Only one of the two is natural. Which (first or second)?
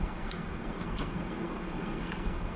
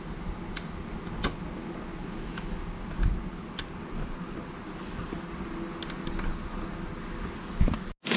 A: second